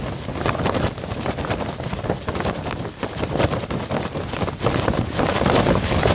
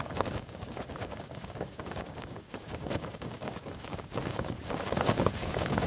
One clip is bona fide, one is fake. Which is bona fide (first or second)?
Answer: first